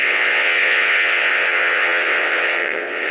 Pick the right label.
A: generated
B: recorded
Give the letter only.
A